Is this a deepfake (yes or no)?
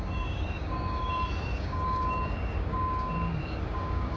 yes